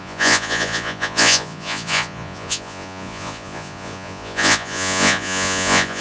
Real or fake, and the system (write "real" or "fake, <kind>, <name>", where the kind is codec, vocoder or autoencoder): fake, vocoder, Vocos